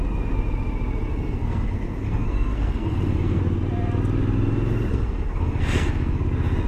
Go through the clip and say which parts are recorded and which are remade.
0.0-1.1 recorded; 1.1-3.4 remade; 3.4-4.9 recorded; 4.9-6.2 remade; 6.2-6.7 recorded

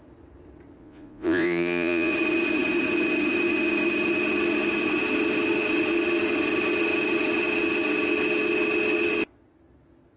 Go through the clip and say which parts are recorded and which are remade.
0.0-0.8 recorded; 0.8-2.1 remade; 2.1-10.2 recorded

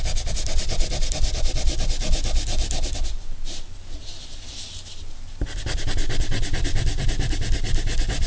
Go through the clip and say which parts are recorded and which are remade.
0.0-8.3 recorded

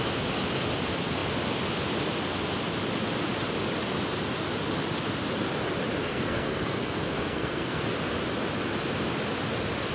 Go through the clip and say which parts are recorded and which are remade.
0.0-6.0 recorded; 6.0-7.8 remade; 7.8-9.9 recorded

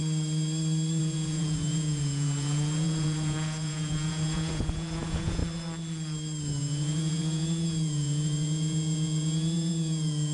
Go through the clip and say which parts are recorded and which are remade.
0.0-1.0 recorded; 1.0-5.4 remade; 5.4-6.6 recorded; 6.6-10.3 remade

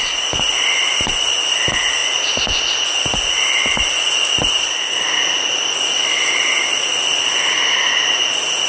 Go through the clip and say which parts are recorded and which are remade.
0.0-8.7 recorded